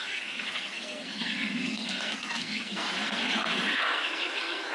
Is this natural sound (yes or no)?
no